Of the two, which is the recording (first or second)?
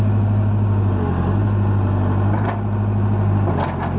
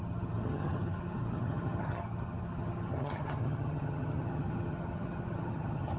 first